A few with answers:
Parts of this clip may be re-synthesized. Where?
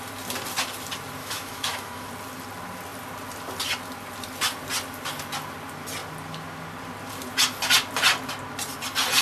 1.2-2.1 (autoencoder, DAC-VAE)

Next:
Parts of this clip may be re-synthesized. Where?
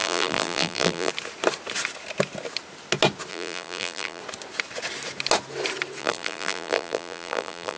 0.0-1.1 (vocoder, BigVGAN v2); 3.3-4.2; 6.0-7.8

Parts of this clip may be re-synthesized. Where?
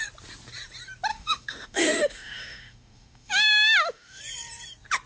1.1-4.2 (autoencoder, DAC-VAE)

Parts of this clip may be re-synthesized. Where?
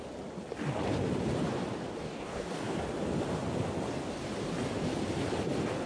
2.0-2.8 (codec, DAC)